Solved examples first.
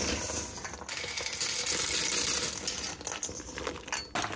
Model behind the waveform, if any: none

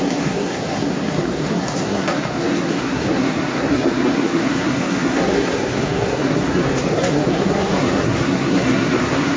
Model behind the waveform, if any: codec, SNAC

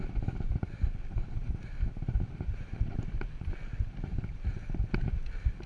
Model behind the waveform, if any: none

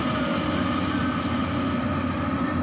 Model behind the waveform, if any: none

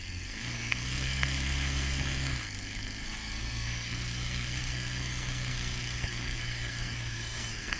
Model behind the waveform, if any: codec, SNAC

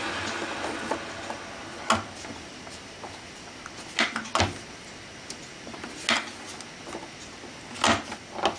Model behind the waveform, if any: none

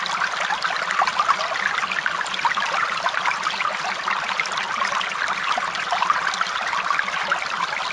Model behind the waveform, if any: none